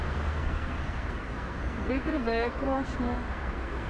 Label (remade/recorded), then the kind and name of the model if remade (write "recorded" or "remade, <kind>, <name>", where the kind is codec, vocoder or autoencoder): remade, codec, SNAC